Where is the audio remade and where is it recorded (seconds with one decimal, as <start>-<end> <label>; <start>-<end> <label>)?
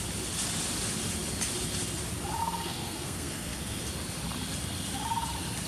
0.0-2.4 recorded; 2.4-3.8 remade; 3.8-5.7 recorded